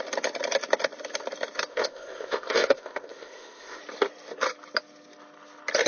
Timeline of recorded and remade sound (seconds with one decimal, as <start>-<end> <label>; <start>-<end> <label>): 0.0-1.7 recorded; 1.7-3.8 remade; 3.8-5.9 recorded